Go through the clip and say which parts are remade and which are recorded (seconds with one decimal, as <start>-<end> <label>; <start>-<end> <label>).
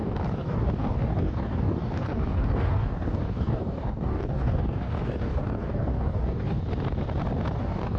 0.0-6.6 remade; 6.6-7.6 recorded; 7.6-8.0 remade